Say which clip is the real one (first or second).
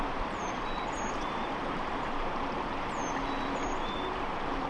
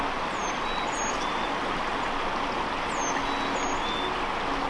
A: second